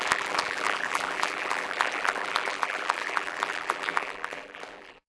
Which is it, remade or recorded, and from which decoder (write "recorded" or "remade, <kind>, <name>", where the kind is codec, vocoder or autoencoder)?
remade, vocoder, BigVGAN v2